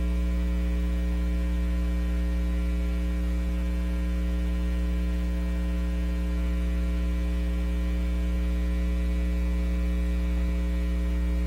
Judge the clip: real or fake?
real